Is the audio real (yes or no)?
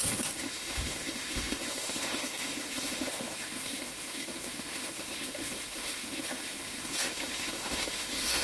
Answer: no